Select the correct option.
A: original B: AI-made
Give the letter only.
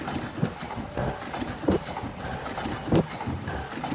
A